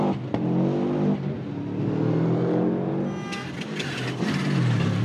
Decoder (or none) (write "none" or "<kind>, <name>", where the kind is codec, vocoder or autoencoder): none